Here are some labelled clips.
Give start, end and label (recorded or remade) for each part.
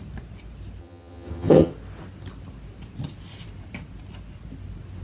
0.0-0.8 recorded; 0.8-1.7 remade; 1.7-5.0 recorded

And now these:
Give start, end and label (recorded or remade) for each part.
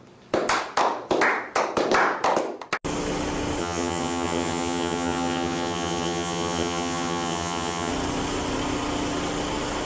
0.0-3.6 recorded; 3.6-7.9 remade; 7.9-9.9 recorded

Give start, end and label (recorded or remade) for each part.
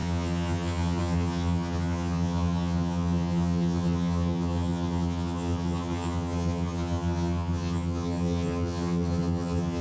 0.0-9.8 remade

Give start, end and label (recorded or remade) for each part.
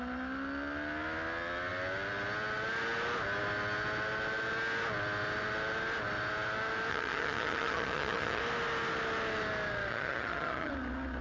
0.0-6.9 recorded; 6.9-8.4 remade; 8.4-9.9 recorded; 9.9-10.7 remade; 10.7-11.2 recorded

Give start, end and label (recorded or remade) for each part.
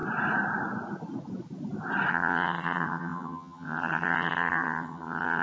0.0-2.1 recorded; 2.1-5.4 remade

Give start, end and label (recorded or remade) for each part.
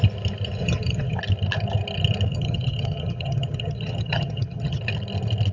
0.0-0.6 recorded; 0.6-1.2 remade; 1.2-2.3 recorded; 2.3-4.8 remade; 4.8-5.5 recorded